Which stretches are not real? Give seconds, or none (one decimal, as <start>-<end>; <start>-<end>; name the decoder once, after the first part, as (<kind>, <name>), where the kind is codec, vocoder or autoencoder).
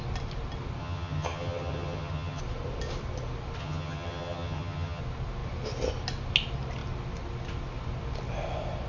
0.8-2.4 (vocoder, HiFi-GAN); 3.6-5.0